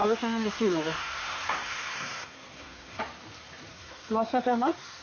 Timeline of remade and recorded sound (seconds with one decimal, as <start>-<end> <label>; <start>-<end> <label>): 0.0-3.0 remade; 3.0-3.7 recorded; 3.7-5.0 remade